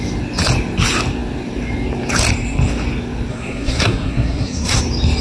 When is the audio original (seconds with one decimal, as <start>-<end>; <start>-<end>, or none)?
0.0-3.3; 4.8-5.2